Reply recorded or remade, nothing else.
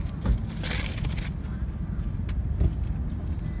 recorded